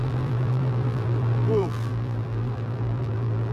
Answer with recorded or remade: remade